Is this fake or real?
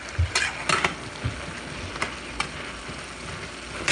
real